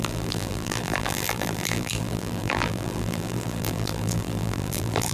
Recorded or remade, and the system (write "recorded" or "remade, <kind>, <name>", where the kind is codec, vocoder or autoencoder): remade, vocoder, BigVGAN v2